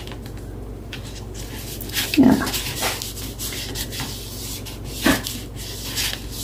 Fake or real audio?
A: real